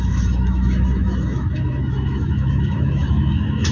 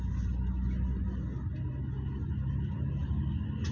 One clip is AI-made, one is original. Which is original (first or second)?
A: second